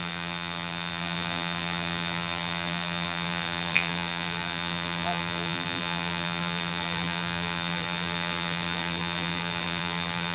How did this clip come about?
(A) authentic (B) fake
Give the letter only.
B